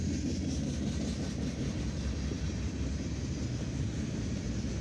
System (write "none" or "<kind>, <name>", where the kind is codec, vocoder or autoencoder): none